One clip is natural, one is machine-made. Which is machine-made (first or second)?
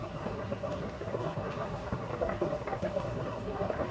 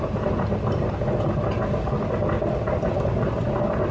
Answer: first